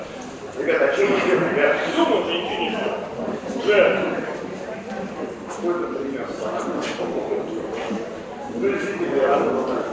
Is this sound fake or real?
real